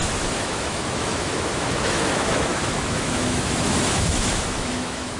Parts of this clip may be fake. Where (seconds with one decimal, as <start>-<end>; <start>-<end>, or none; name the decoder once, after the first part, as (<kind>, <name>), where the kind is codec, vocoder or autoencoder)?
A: 0.0-5.2 (autoencoder, DAC-VAE)